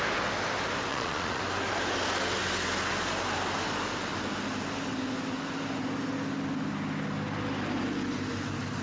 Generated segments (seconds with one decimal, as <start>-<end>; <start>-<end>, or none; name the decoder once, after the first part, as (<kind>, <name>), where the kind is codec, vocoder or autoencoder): 0.9-1.4 (vocoder, Vocos)